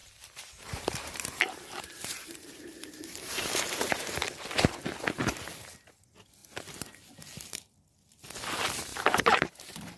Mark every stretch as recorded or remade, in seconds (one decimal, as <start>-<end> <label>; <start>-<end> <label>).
0.0-4.3 remade; 4.3-8.9 recorded; 8.9-10.0 remade